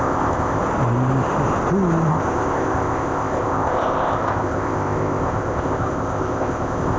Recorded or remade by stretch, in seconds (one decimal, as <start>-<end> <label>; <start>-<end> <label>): 0.0-0.6 remade; 0.6-2.1 recorded; 2.1-7.0 remade